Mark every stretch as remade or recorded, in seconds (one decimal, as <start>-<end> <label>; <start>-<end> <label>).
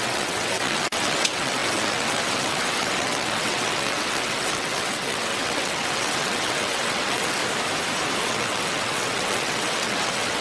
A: 0.0-7.4 remade; 7.4-8.2 recorded; 8.2-10.4 remade